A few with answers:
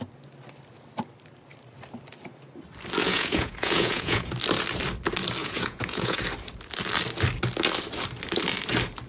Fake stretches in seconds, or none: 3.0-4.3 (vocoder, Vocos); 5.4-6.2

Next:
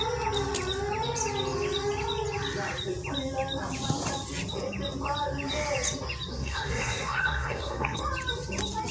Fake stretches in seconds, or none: 6.3-8.0 (codec, SNAC)

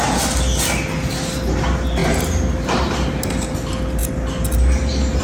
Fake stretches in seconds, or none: none

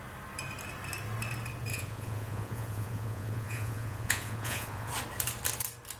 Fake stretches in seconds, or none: 1.7-4.9 (vocoder, Vocos)

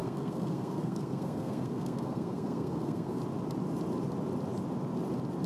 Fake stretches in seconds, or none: 0.0-3.2 (codec, SNAC)

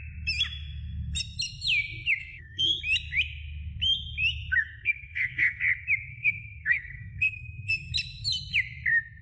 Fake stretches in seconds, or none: 2.2-2.8 (codec, SNAC); 4.6-5.6; 6.1-7.9

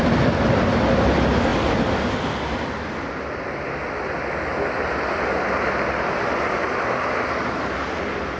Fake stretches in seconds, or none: none